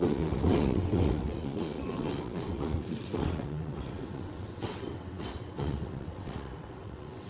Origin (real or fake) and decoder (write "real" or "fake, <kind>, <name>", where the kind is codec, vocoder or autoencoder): fake, vocoder, WaveNeXt